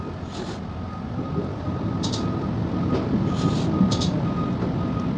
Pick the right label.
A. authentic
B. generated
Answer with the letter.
A